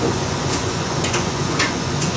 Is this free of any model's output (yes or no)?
no